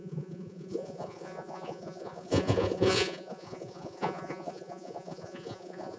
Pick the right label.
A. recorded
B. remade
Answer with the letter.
B